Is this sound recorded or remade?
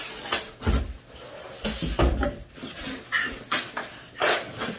recorded